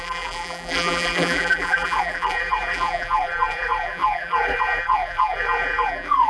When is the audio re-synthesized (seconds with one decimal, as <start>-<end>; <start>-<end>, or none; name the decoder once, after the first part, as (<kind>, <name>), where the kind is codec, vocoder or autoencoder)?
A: 0.0-6.3 (vocoder, BigVGAN v2)

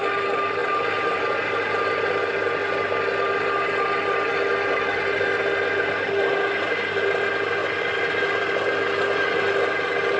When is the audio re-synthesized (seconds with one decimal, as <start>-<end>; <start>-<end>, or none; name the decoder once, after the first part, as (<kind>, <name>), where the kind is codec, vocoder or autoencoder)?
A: none

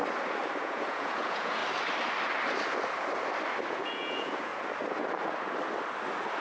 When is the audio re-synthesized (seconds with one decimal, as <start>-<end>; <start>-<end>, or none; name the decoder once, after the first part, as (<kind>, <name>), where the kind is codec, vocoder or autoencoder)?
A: 0.6-1.6 (vocoder, Vocos); 3.7-4.5

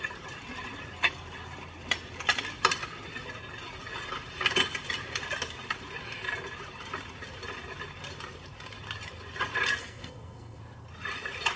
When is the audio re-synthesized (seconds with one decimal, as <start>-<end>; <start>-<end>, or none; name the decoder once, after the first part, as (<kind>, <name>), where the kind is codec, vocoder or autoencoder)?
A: 9.8-10.6 (codec, SNAC)

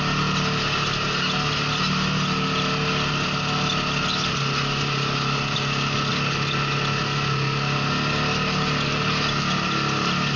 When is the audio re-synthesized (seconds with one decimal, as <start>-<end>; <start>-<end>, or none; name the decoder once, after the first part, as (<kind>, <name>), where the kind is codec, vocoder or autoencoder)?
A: none

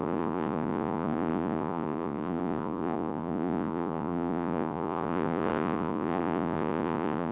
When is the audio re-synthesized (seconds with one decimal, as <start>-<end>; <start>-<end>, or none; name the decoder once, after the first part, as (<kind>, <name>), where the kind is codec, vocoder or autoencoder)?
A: 0.0-7.3 (vocoder, Vocos)

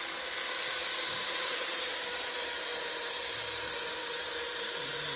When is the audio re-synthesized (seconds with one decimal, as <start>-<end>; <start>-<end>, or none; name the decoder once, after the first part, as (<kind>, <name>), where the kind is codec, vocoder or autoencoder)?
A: none